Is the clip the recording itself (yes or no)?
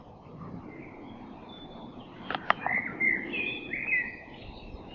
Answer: yes